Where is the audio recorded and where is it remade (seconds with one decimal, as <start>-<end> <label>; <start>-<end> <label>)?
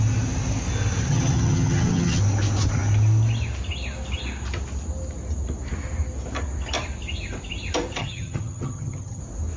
0.0-1.1 recorded; 1.1-2.2 remade; 2.2-8.0 recorded; 8.0-9.2 remade; 9.2-9.6 recorded